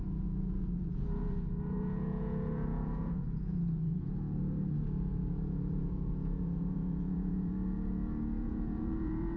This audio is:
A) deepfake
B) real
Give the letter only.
A